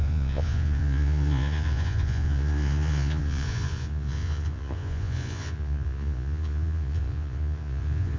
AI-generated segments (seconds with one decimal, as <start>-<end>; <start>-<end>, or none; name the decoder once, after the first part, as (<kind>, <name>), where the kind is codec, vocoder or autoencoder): 0.0-8.2 (vocoder, Vocos)